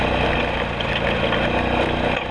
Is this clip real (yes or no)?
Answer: yes